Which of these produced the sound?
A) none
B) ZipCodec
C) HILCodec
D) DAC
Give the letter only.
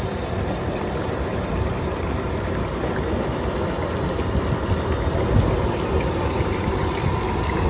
A